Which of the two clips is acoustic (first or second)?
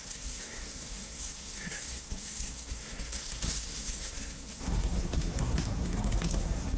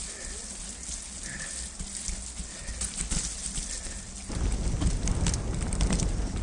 second